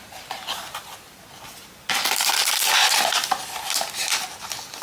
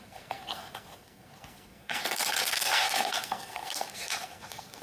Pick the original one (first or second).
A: first